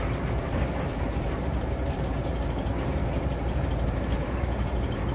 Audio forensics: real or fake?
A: fake